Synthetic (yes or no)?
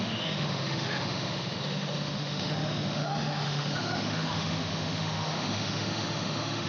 yes